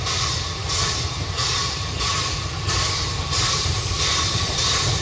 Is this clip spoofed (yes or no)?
yes